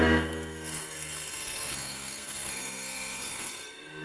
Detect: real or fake fake